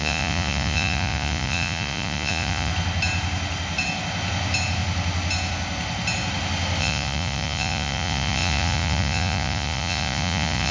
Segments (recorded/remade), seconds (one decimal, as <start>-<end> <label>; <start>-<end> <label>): 0.0-2.7 remade; 2.7-6.8 recorded; 6.8-10.7 remade